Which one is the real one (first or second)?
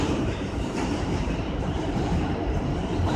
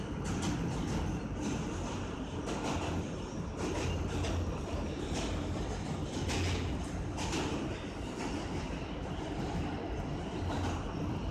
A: second